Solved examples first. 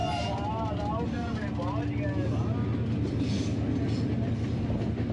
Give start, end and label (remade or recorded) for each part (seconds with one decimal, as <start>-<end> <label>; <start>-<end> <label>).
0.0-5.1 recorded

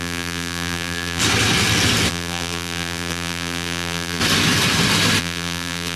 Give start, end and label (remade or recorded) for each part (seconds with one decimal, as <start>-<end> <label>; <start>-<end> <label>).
0.0-1.2 remade; 1.2-2.1 recorded; 2.1-4.2 remade; 4.2-5.2 recorded; 5.2-6.0 remade

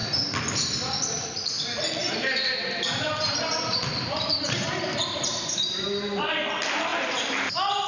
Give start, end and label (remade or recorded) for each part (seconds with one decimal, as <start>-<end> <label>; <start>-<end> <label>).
0.0-2.0 recorded; 2.0-6.2 remade; 6.2-6.9 recorded; 6.9-7.9 remade

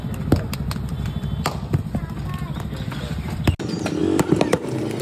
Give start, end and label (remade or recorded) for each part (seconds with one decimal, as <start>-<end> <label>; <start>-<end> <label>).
0.0-5.0 recorded

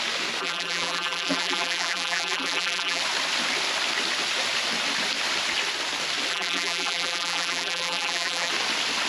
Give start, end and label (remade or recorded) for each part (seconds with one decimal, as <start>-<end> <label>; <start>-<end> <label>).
0.0-0.4 recorded; 0.4-3.0 remade; 3.0-6.3 recorded; 6.3-8.5 remade; 8.5-9.1 recorded

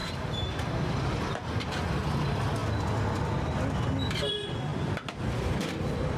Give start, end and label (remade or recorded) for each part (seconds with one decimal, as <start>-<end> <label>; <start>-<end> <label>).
0.0-2.6 remade; 2.6-4.3 recorded; 4.3-4.7 remade; 4.7-6.2 recorded

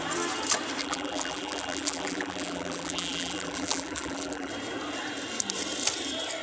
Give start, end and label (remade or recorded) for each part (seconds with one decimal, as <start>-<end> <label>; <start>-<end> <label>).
0.0-0.8 recorded; 0.8-4.5 remade; 4.5-6.4 recorded